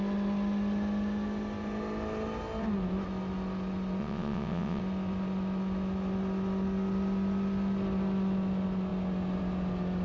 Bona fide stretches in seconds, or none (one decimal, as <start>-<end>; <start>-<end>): 0.0-4.0; 4.8-10.0